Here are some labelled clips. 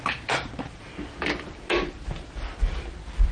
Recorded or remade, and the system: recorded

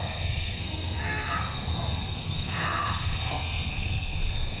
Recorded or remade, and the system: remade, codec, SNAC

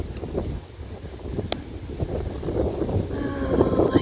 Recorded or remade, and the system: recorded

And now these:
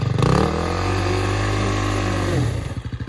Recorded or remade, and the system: recorded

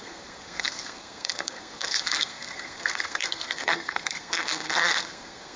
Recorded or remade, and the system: remade, codec, SNAC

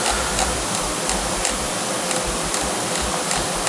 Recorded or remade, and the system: recorded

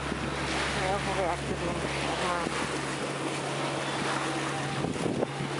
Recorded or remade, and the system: recorded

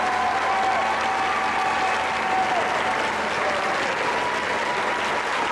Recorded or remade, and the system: recorded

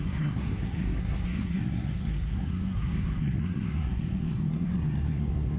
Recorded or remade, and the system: remade, codec, SNAC